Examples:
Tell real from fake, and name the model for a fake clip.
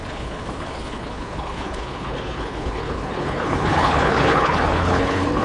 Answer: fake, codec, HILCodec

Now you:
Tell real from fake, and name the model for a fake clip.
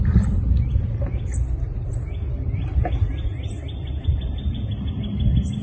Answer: real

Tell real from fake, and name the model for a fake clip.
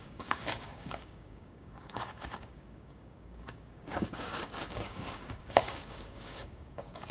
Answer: fake, codec, DAC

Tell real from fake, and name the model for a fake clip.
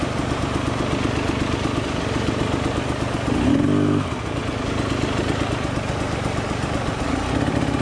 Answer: real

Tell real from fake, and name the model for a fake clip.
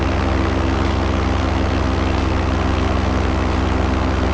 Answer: real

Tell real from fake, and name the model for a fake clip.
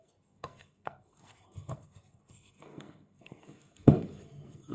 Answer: fake, codec, SNAC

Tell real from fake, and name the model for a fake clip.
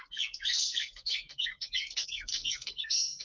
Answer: fake, codec, SNAC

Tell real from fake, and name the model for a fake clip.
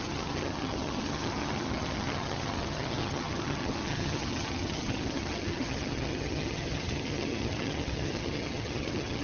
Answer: fake, vocoder, HiFi-GAN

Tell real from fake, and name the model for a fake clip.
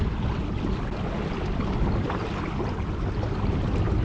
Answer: real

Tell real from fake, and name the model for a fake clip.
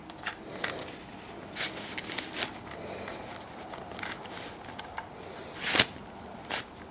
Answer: real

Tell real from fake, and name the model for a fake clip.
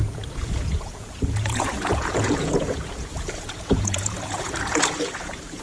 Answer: fake, vocoder, Vocos